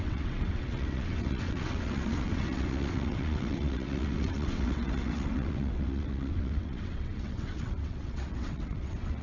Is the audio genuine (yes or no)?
no